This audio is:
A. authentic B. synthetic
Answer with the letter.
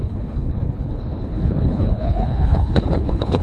B